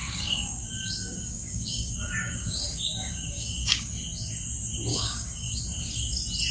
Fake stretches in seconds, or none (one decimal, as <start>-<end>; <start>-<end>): 0.0-3.9; 4.9-5.6